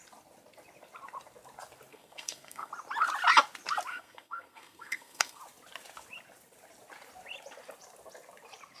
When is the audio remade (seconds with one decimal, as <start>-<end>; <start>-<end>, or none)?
1.9-2.7; 3.9-5.4